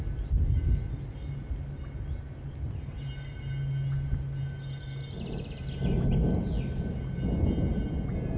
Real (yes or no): yes